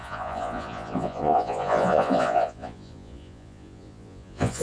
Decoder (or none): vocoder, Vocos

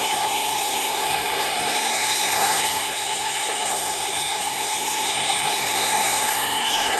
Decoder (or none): codec, SNAC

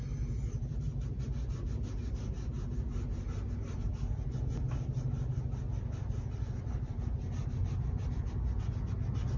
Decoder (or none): none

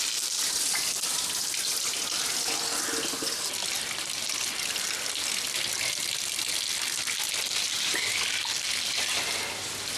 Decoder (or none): none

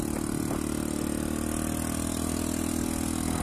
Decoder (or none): none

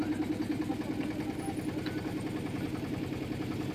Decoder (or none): none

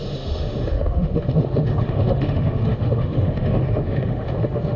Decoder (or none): autoencoder, DAC-VAE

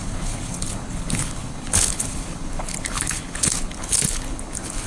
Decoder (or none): codec, HILCodec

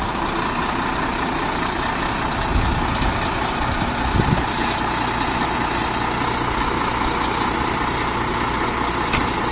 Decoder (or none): none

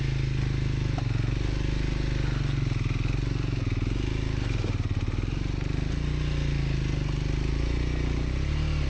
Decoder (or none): none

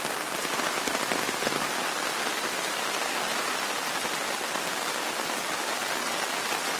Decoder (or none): none